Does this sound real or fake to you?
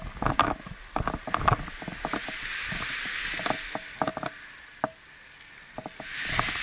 real